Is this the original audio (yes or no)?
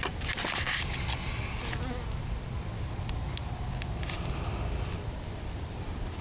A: yes